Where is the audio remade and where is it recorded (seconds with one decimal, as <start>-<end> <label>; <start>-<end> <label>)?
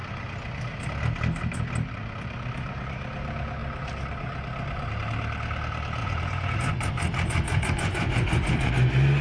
0.0-6.0 recorded; 6.0-8.7 remade; 8.7-9.2 recorded